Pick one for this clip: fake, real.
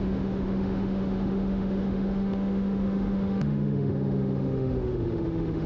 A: fake